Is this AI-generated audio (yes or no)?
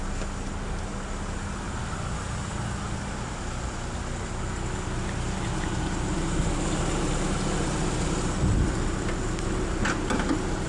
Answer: no